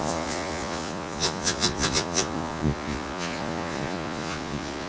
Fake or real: fake